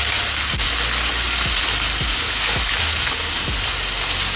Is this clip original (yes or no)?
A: yes